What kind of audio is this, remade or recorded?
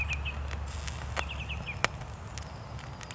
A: recorded